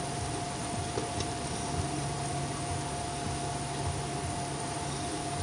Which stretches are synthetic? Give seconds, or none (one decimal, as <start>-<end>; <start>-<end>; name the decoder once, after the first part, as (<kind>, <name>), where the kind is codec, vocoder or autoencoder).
none